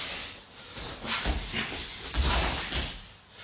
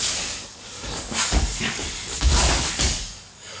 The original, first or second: first